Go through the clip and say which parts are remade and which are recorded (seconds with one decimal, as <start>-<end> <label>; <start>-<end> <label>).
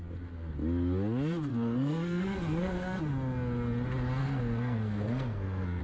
0.0-1.5 recorded; 1.5-3.0 remade; 3.0-4.2 recorded; 4.2-5.8 remade